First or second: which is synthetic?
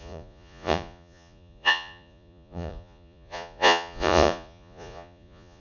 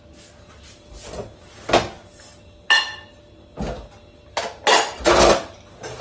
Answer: first